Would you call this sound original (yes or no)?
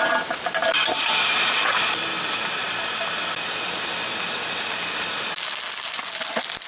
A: yes